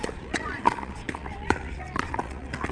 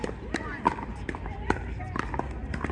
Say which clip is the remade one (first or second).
first